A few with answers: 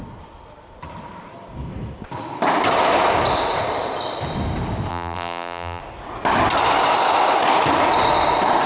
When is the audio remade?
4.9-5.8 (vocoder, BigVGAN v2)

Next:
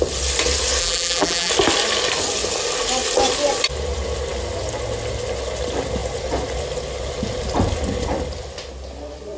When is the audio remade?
0.8-1.5 (vocoder, BigVGAN v2)

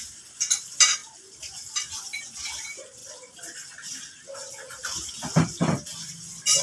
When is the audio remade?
1.0-2.2 (vocoder, BigVGAN v2); 3.0-5.1

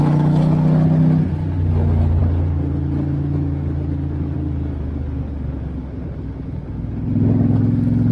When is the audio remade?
none

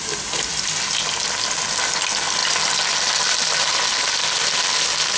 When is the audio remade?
none

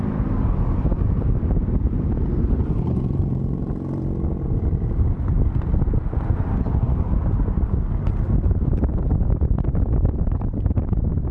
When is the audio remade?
0.0-11.3 (vocoder, BigVGAN v2)

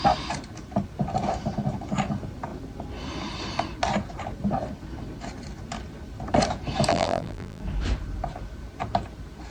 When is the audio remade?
6.9-7.6 (vocoder, BigVGAN v2)

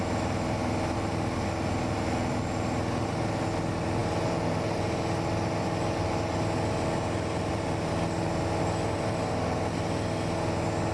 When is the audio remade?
none